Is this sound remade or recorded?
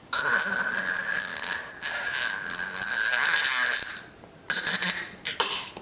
recorded